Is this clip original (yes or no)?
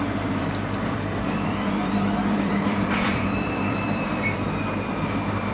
no